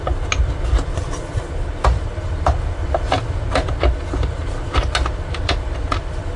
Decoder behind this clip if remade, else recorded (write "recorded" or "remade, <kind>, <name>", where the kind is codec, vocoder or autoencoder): recorded